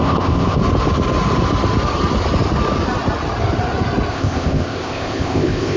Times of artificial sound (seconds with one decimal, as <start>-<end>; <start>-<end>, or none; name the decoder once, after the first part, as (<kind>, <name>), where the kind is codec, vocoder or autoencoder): 0.0-0.6 (codec, ZipCodec); 4.1-5.8